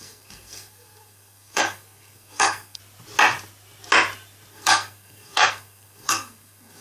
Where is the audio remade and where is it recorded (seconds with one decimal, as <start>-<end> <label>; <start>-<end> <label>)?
0.0-2.8 remade; 2.8-4.5 recorded; 4.5-6.8 remade